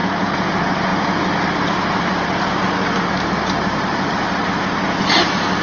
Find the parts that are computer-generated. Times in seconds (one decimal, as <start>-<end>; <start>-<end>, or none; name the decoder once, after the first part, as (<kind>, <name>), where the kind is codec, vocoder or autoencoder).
0.0-0.5 (vocoder, Vocos)